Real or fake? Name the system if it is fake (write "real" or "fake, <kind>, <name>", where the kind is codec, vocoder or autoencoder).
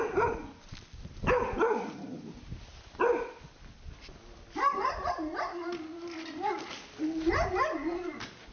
real